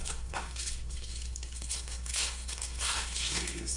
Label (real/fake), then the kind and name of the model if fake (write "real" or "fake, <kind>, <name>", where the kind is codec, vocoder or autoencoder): fake, codec, SNAC